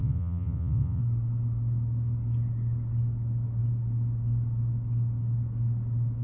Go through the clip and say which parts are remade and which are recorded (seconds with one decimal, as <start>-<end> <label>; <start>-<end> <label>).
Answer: 0.0-1.0 remade; 1.0-6.2 recorded